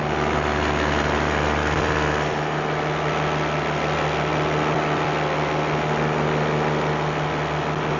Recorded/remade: recorded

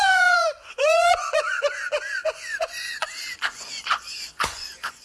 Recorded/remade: remade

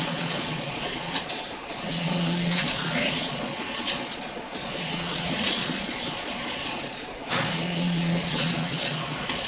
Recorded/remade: remade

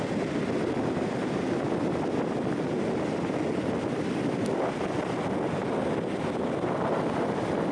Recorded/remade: recorded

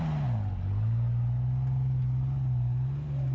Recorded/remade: recorded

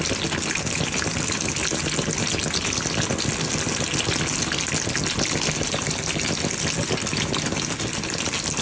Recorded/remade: recorded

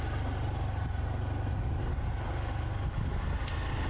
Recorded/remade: recorded